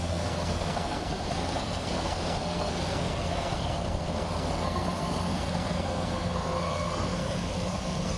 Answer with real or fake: fake